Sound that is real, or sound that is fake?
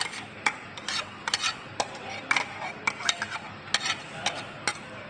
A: real